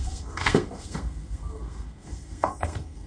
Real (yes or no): no